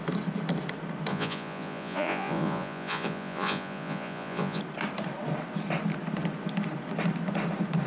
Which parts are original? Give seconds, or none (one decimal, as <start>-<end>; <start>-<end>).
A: 0.0-1.1; 4.6-7.9